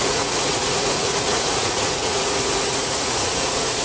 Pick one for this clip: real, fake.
fake